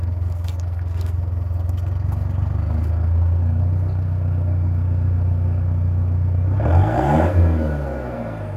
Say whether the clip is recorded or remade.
remade